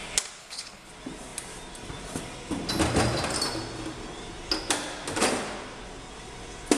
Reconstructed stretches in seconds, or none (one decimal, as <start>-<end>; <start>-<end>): 0.4-0.9